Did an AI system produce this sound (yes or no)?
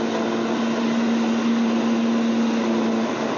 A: no